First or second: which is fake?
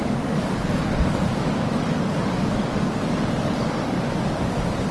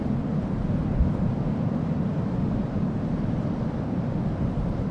first